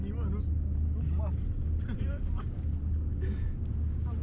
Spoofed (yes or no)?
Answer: no